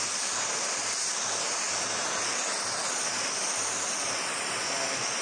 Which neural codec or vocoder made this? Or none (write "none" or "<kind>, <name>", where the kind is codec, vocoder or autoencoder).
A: none